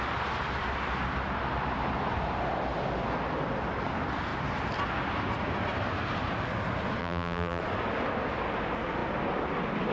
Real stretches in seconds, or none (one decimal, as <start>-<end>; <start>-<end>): 0.0-7.0; 7.6-9.9